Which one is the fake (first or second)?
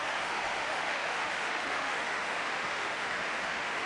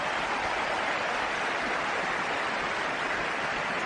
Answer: first